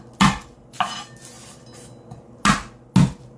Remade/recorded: recorded